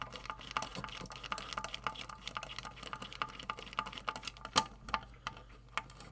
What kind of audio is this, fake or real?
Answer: real